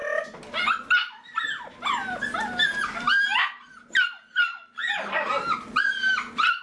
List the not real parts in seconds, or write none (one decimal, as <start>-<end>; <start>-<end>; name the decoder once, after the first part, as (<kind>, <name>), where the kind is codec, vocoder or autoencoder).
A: none